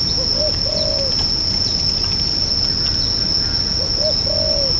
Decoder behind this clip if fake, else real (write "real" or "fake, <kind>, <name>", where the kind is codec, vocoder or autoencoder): real